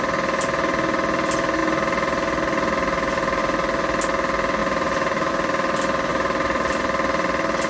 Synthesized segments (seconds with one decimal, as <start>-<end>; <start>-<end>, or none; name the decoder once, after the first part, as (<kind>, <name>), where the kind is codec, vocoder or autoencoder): 4.6-5.3 (vocoder, BigVGAN v2); 6.1-6.8

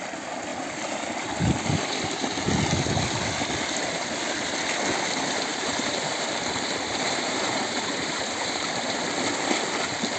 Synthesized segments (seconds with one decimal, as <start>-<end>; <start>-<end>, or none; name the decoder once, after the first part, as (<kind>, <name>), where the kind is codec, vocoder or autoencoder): 5.5-9.0 (vocoder, BigVGAN v2)